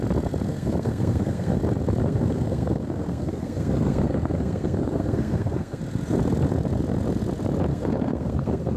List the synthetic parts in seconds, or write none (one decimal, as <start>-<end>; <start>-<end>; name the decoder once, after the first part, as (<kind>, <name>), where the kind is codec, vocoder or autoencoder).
0.5-1.6 (codec, SNAC); 2.0-5.8; 7.7-8.8